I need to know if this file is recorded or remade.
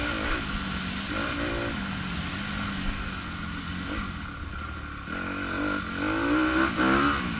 recorded